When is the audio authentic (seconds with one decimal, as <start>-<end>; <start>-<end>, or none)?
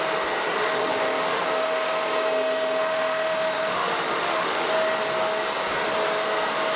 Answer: 0.0-0.6; 4.7-6.8